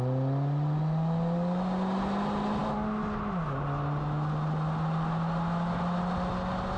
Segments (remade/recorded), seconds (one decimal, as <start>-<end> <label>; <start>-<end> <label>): 0.0-6.8 recorded